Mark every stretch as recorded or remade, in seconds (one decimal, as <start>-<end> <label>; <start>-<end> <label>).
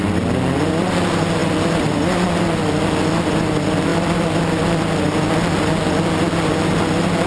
0.0-7.3 recorded